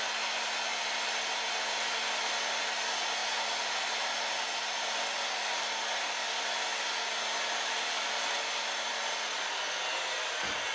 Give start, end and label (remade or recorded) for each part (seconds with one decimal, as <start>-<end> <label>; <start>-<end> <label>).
0.0-10.7 recorded